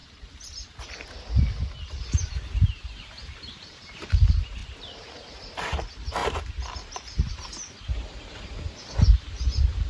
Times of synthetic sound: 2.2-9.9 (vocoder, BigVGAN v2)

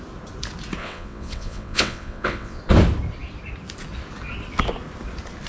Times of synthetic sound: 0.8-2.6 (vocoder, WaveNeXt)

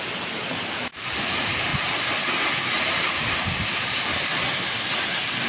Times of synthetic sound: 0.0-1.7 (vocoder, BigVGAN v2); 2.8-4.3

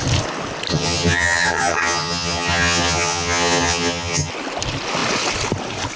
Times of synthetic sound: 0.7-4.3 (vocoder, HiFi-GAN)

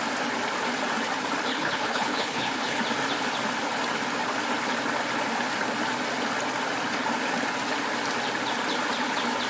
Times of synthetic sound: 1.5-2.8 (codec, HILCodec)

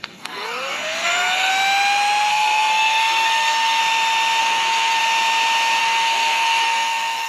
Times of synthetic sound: 0.0-1.5 (codec, SNAC); 2.3-3.8; 4.4-5.0; 5.8-7.3

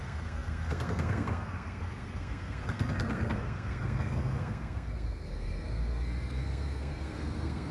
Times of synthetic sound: 0.0-7.7 (codec, SNAC)

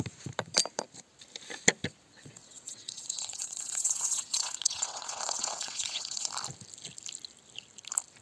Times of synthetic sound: 2.1-6.3 (vocoder, WaveNeXt)